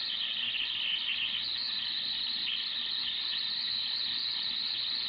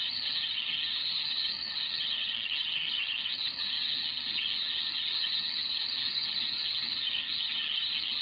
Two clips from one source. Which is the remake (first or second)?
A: second